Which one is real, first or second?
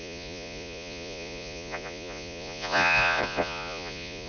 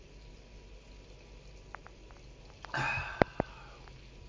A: second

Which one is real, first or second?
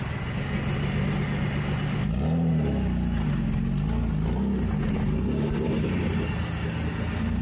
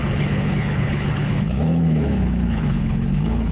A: first